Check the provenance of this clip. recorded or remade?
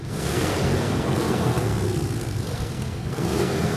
remade